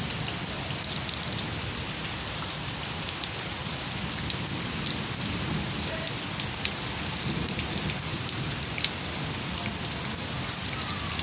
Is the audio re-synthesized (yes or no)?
no